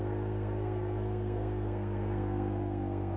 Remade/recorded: remade